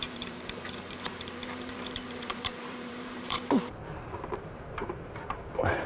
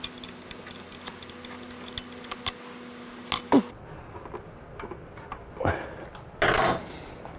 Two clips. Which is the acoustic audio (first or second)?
second